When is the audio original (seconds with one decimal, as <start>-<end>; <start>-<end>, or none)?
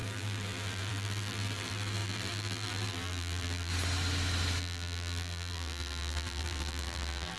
3.7-4.6